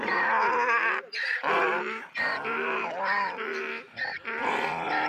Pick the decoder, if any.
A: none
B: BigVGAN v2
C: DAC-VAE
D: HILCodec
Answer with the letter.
B